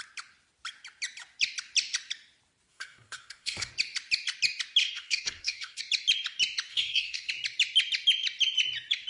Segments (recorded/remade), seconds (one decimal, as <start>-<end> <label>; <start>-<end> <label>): 0.0-2.7 recorded; 2.7-3.7 remade; 3.7-4.8 recorded; 4.8-5.8 remade; 5.8-6.7 recorded; 6.7-7.3 remade; 7.3-9.1 recorded